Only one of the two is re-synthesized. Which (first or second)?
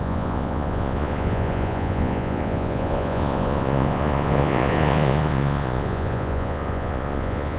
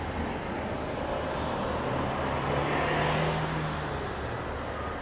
first